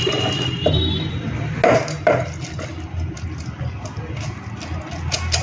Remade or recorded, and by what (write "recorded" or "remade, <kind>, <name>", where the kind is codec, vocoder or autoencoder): recorded